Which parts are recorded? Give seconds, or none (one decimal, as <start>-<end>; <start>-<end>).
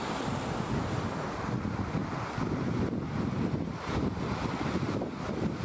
0.0-2.0